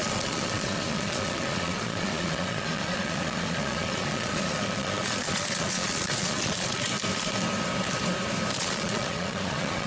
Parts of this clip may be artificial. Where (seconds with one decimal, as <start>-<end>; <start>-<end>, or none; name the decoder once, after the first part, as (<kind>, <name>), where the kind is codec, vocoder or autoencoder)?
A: 0.0-6.9 (vocoder, Vocos); 8.5-9.9